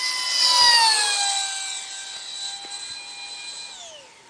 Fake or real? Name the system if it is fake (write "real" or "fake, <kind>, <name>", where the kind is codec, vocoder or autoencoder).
real